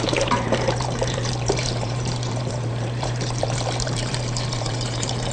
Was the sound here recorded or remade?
remade